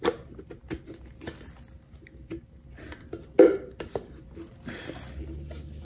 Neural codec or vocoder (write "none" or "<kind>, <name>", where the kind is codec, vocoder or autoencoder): none